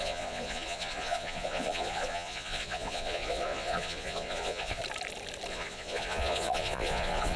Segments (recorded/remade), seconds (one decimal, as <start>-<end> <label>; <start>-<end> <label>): 0.0-4.8 remade; 4.8-5.5 recorded; 5.5-7.4 remade